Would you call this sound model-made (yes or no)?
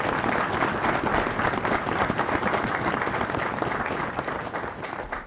no